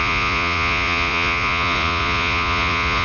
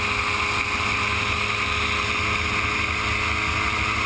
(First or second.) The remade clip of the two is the first